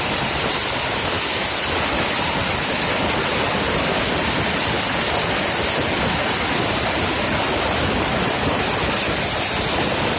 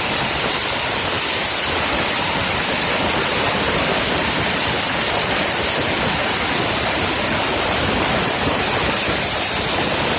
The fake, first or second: second